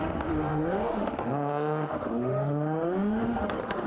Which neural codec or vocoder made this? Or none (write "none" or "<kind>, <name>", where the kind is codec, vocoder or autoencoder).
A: autoencoder, DAC-VAE